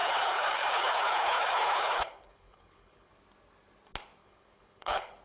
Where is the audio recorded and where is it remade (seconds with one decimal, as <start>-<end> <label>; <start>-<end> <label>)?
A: 0.0-3.1 remade; 3.1-4.2 recorded; 4.2-5.2 remade